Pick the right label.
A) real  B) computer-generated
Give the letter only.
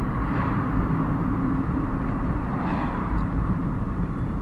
B